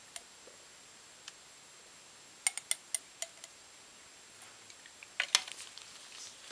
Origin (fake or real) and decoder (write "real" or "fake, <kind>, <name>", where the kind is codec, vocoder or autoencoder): real